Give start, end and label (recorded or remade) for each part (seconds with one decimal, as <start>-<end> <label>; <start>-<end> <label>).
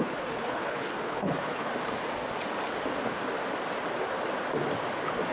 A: 0.0-1.7 remade; 1.7-5.3 recorded